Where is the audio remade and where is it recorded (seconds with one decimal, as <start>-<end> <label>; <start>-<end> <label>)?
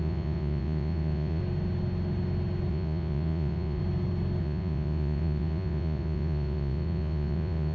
0.0-1.4 remade; 1.4-2.7 recorded; 2.7-3.8 remade; 3.8-4.4 recorded; 4.4-7.7 remade